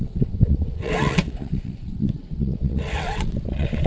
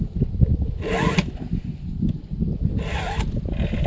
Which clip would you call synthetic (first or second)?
first